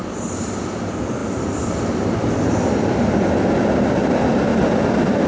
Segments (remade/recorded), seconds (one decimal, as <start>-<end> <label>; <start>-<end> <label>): 0.0-0.6 recorded; 0.6-4.5 remade; 4.5-5.3 recorded